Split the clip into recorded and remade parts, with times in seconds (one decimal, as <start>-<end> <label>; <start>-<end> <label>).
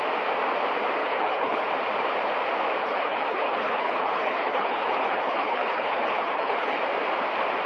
0.0-1.0 recorded; 1.0-1.7 remade; 1.7-2.8 recorded; 2.8-6.8 remade; 6.8-7.7 recorded